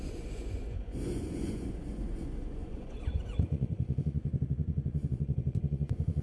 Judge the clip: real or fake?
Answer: fake